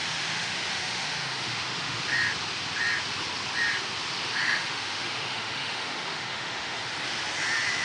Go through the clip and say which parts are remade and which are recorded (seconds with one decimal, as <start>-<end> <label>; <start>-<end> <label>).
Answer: 0.0-2.0 remade; 2.0-4.3 recorded; 4.3-6.8 remade; 6.8-7.8 recorded